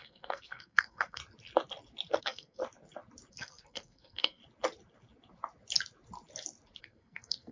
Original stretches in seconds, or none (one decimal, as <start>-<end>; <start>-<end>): 1.2-2.2; 2.6-3.3; 4.4-6.8